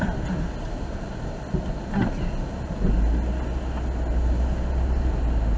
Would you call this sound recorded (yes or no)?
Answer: yes